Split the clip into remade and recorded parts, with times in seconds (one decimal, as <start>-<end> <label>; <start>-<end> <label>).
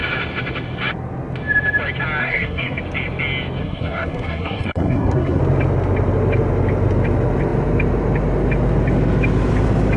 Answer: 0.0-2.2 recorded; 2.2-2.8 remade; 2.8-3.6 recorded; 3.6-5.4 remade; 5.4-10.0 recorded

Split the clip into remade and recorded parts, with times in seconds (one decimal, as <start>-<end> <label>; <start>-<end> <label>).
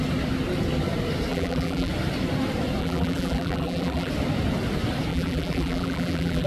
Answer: 0.0-1.3 recorded; 1.3-1.9 remade; 1.9-2.8 recorded; 2.8-4.1 remade; 4.1-5.1 recorded; 5.1-6.5 remade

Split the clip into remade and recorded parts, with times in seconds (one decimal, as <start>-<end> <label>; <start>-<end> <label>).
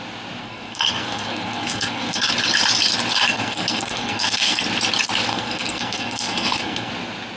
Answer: 0.0-0.4 recorded; 0.4-2.3 remade; 2.3-3.1 recorded; 3.1-4.6 remade; 4.6-5.3 recorded; 5.3-6.9 remade; 6.9-7.4 recorded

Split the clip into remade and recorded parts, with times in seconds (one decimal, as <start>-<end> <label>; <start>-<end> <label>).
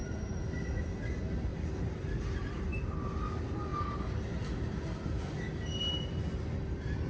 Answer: 0.0-0.8 remade; 0.8-1.5 recorded; 1.5-2.9 remade; 2.9-3.7 recorded; 3.7-4.6 remade; 4.6-7.1 recorded